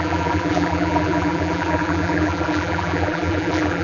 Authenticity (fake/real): fake